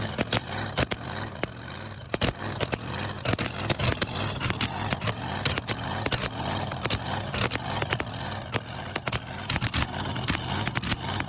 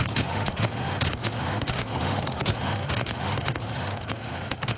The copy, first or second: second